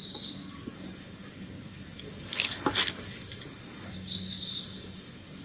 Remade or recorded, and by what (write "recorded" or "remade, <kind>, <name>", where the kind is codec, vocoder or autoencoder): remade, codec, DAC